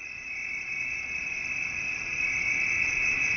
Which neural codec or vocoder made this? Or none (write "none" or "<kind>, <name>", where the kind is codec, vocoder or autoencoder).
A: none